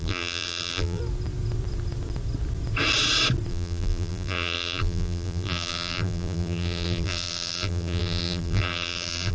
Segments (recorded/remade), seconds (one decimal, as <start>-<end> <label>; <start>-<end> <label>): 0.0-1.0 remade; 1.0-3.5 recorded; 3.5-9.3 remade